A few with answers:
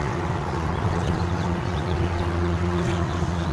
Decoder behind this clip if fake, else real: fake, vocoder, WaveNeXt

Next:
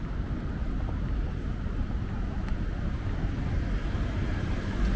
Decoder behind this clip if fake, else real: real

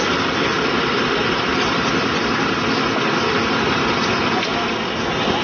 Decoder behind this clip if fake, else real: fake, vocoder, BigVGAN v2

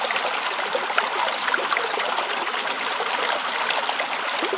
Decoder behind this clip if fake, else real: real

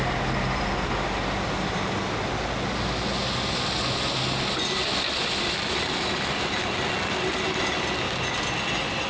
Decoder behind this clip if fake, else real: real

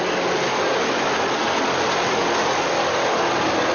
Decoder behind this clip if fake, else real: real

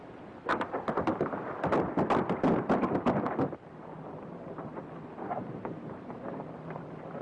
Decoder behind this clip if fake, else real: fake, vocoder, BigVGAN v2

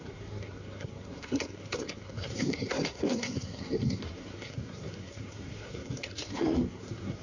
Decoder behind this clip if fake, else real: fake, codec, SNAC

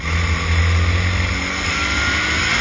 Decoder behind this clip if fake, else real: real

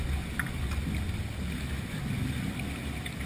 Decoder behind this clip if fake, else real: real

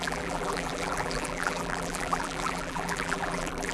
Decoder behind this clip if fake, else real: fake, vocoder, BigVGAN v2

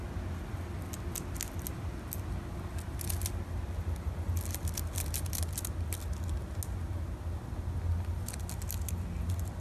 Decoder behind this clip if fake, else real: real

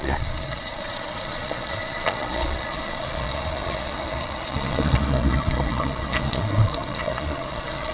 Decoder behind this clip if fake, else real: fake, vocoder, Vocos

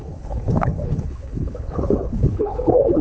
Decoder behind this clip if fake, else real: fake, codec, HILCodec